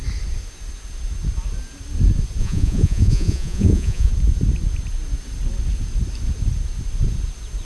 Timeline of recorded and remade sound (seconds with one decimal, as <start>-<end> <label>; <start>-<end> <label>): 0.0-2.4 recorded; 2.4-4.1 remade; 4.1-7.6 recorded